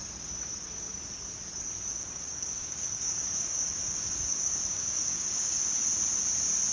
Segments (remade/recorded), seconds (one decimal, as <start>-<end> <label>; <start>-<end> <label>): 0.0-1.9 recorded; 1.9-5.6 remade; 5.6-6.7 recorded